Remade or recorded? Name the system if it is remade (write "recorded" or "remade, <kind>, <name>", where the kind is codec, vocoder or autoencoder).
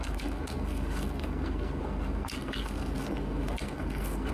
remade, codec, SNAC